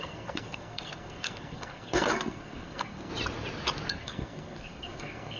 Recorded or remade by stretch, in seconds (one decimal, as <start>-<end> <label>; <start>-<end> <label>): 0.0-3.1 remade; 3.1-3.9 recorded; 3.9-5.4 remade